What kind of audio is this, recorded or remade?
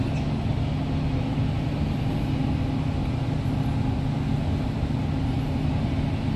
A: recorded